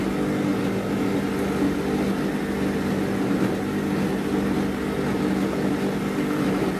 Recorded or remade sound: recorded